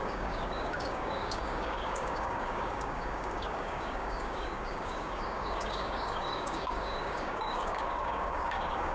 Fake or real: fake